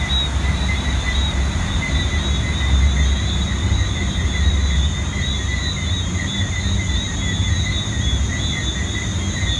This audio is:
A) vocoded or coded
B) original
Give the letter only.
B